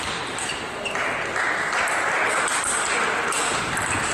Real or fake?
real